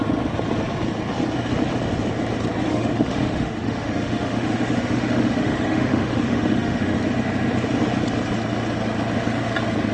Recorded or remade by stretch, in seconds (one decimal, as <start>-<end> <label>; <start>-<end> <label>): 0.0-2.7 recorded; 2.7-7.0 remade; 7.0-9.9 recorded